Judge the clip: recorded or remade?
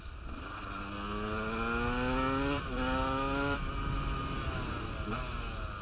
recorded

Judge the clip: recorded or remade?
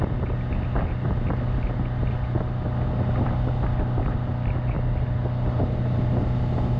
recorded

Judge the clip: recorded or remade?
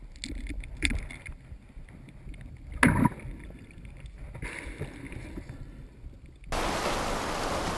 recorded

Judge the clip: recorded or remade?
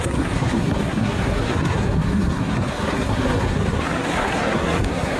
remade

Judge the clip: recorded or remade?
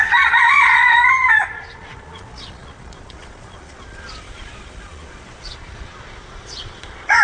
remade